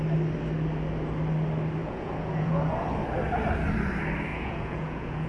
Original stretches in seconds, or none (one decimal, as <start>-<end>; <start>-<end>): 0.0-1.8; 2.6-4.3